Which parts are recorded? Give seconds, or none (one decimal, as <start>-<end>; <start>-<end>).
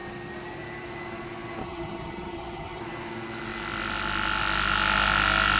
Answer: 0.0-1.6; 2.8-5.6